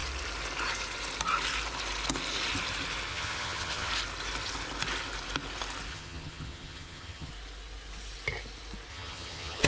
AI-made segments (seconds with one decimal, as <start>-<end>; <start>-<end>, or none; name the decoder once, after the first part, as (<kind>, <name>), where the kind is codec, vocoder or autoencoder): 3.1-3.9 (vocoder, HiFi-GAN); 5.9-7.3; 8.9-9.7